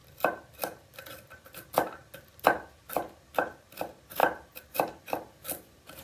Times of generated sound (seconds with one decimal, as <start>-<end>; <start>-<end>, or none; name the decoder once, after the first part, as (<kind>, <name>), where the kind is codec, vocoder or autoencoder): 0.0-2.0 (vocoder, BigVGAN v2); 3.5-6.0